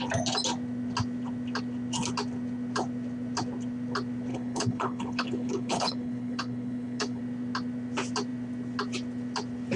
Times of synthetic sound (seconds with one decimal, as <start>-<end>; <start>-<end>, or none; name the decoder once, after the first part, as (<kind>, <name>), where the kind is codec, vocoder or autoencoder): 4.3-7.2 (codec, HILCodec)